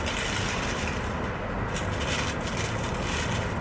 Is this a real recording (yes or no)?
yes